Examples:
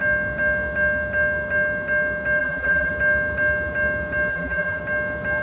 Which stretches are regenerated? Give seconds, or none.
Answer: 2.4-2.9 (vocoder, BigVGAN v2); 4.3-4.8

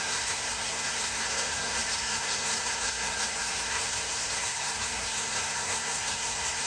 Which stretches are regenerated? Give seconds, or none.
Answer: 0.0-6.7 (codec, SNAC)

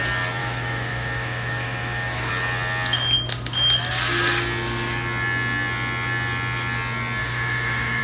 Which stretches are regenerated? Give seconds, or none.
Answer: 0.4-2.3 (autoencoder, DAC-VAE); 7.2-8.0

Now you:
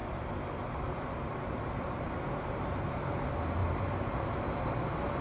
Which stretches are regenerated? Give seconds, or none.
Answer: 0.0-3.1 (vocoder, BigVGAN v2); 3.6-4.4

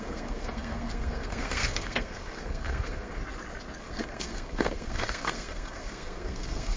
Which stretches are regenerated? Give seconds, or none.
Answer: 0.0-3.2 (codec, SNAC); 3.8-6.8

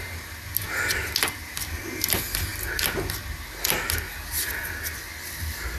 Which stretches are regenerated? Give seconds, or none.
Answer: none